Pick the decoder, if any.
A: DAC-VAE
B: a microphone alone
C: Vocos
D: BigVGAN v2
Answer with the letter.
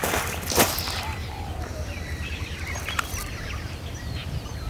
D